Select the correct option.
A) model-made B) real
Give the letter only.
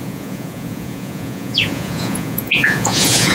A